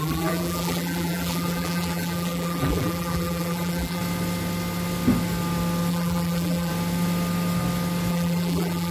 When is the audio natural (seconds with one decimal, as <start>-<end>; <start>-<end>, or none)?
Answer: 4.0-5.9; 6.7-8.1